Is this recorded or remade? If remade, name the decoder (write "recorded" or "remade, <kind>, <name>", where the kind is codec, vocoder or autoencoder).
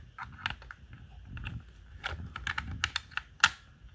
recorded